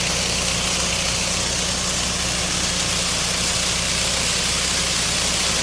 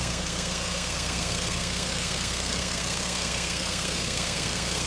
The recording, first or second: first